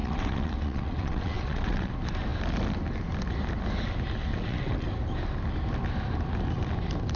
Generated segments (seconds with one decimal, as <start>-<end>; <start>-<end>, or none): 0.0-1.9; 4.3-4.9